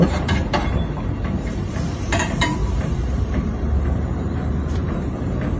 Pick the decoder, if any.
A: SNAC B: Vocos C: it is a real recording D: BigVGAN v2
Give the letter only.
D